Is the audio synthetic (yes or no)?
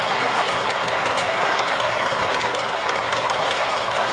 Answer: yes